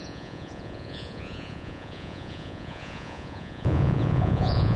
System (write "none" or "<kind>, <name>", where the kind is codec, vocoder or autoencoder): vocoder, Vocos